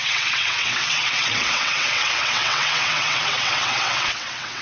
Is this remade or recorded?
remade